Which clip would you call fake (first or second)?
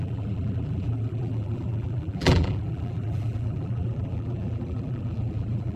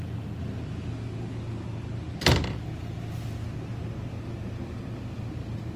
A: first